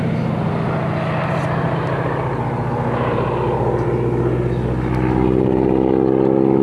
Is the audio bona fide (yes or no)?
yes